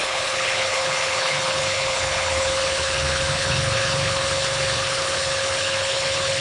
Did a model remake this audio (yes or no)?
yes